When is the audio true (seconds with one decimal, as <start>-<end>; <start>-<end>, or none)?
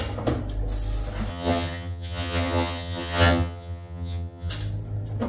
0.0-1.3; 4.5-5.3